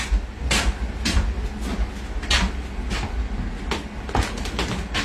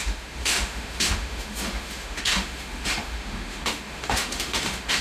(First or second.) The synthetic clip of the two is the second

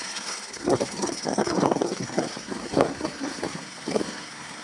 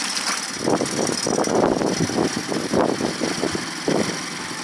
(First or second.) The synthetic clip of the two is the first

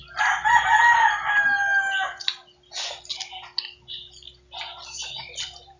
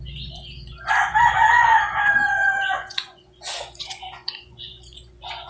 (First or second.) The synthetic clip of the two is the second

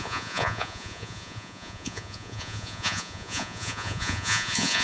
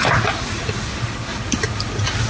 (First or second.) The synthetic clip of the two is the first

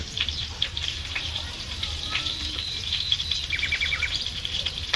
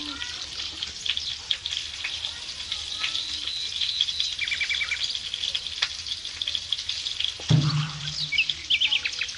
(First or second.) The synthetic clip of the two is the first